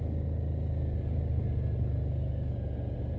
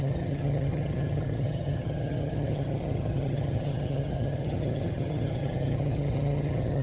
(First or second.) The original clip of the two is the first